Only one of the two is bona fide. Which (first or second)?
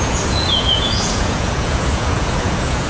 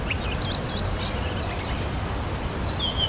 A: second